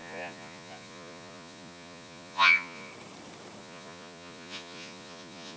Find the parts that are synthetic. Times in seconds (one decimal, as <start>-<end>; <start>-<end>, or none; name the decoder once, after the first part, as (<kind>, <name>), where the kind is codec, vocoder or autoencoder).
0.0-2.9 (vocoder, Vocos); 3.6-5.6